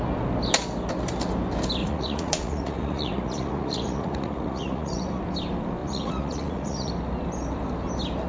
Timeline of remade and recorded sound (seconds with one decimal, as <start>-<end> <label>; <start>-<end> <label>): 0.0-1.8 recorded; 1.8-5.2 remade; 5.2-5.8 recorded; 5.8-6.9 remade; 6.9-8.3 recorded